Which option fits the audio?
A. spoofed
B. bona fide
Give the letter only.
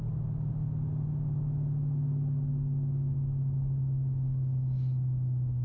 B